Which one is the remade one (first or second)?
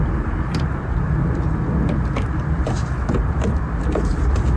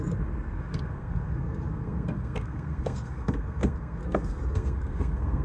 second